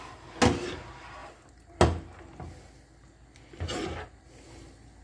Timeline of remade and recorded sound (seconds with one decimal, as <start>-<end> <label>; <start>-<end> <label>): 0.0-5.0 recorded